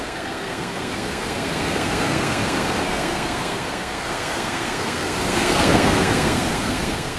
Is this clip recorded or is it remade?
remade